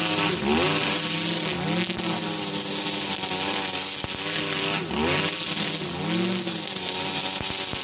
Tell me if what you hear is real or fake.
real